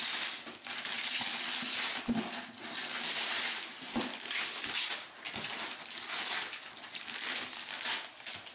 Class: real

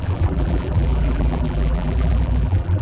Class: fake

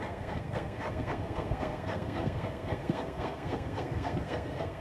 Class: fake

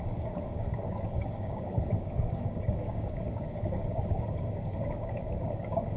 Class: fake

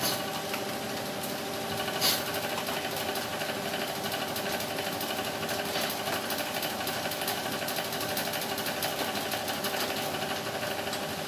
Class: real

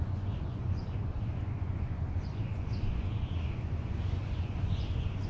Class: fake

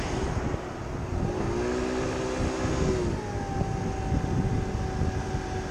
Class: real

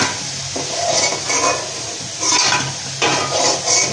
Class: real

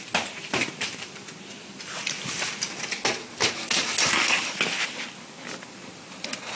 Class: real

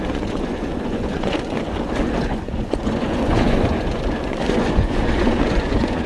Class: fake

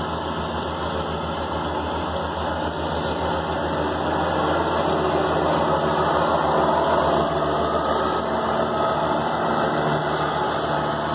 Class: real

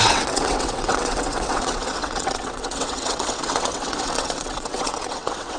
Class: fake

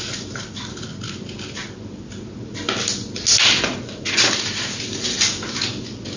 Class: real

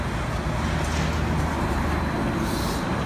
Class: real